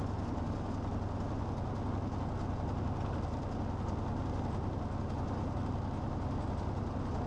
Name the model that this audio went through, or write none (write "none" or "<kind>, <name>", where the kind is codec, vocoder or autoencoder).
none